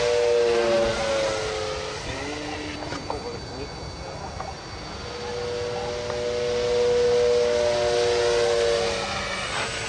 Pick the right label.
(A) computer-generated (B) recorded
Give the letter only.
B